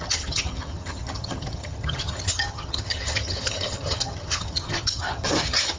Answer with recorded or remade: remade